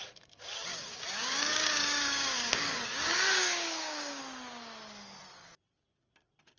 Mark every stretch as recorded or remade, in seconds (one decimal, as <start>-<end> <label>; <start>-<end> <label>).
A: 0.0-0.7 recorded; 0.7-4.2 remade; 4.2-6.6 recorded